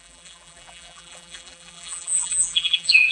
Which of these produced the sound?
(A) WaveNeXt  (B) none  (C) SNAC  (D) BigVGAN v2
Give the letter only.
D